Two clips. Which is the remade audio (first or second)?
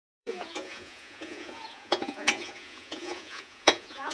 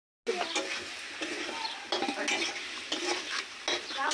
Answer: first